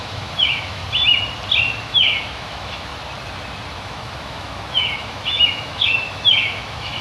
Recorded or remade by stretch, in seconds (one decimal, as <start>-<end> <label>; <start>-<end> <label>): 0.0-0.8 remade; 0.8-1.8 recorded; 1.8-2.9 remade; 2.9-3.7 recorded; 3.7-7.0 remade